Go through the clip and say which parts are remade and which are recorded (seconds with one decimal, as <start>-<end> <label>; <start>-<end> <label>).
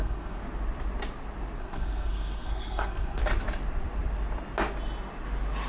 0.0-0.4 remade; 0.4-1.6 recorded; 1.6-3.2 remade; 3.2-5.7 recorded